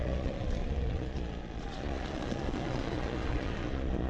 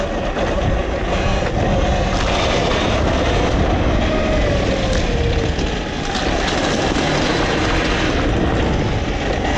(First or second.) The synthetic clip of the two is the first